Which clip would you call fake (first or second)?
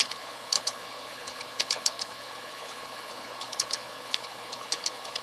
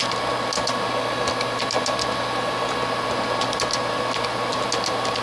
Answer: first